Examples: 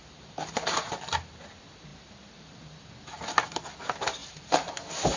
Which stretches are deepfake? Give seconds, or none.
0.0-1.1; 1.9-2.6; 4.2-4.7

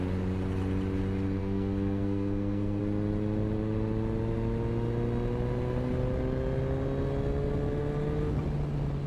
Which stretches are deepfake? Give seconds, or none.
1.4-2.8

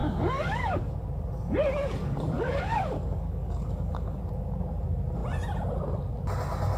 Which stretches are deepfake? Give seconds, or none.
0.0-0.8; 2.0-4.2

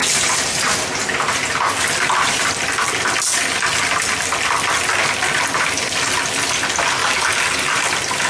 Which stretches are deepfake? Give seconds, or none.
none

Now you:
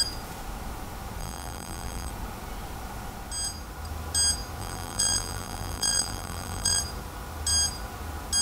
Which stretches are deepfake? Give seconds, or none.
1.2-2.1; 4.6-6.8

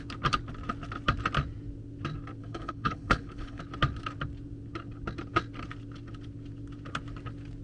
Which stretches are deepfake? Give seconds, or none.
2.4-3.6